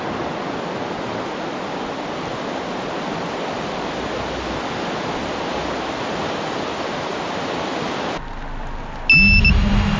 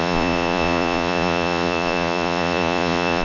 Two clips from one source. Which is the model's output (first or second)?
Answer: second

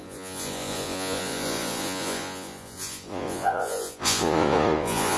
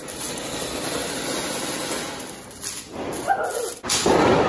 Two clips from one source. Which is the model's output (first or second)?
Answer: first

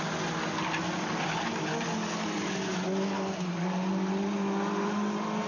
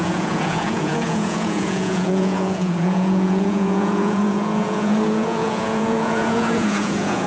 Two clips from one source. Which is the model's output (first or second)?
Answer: second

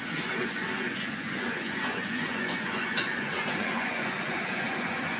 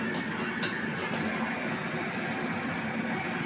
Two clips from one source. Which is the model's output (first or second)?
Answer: first